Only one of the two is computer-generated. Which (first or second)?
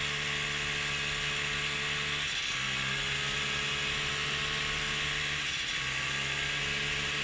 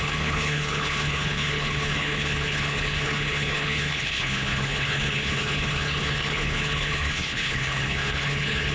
second